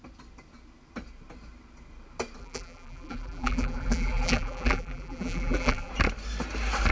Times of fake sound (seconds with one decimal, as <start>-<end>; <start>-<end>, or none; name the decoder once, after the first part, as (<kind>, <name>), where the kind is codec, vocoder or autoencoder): 2.4-5.9 (vocoder, BigVGAN v2)